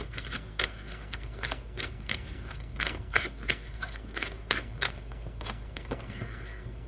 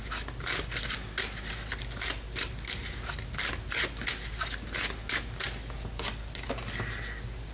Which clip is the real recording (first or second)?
second